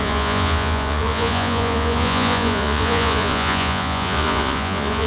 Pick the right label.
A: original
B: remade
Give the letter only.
B